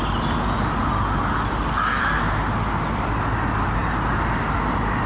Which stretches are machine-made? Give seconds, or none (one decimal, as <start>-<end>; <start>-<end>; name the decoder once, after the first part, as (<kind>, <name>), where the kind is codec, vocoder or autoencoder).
none